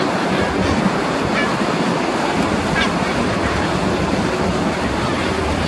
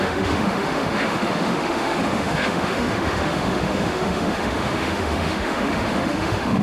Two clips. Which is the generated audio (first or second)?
second